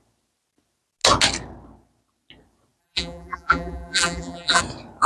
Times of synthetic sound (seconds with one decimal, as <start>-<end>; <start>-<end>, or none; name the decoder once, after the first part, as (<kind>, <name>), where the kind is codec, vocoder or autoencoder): 2.8-4.6 (vocoder, BigVGAN v2)